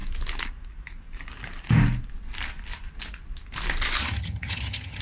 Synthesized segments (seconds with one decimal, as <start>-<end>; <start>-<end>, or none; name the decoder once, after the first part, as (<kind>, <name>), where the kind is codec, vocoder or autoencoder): 4.0-5.0 (vocoder, HiFi-GAN)